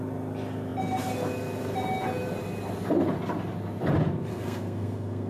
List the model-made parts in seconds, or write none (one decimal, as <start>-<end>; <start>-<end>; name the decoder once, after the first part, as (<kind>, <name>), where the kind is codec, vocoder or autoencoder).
4.3-5.3 (codec, SNAC)